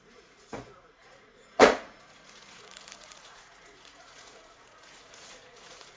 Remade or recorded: remade